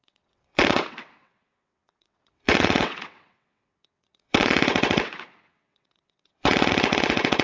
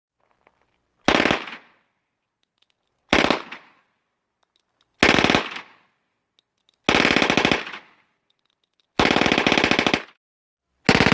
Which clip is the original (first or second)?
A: second